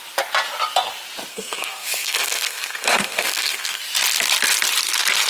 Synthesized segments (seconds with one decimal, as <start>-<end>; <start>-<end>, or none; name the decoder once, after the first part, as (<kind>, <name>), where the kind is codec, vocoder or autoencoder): 1.3-3.8 (codec, SNAC)